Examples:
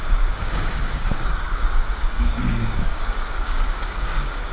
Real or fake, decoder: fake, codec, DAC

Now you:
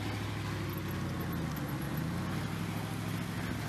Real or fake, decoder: real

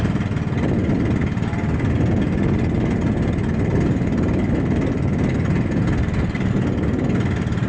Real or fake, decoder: real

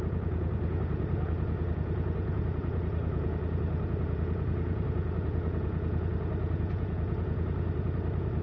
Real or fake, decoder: fake, vocoder, Vocos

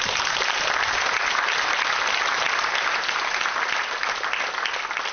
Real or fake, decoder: real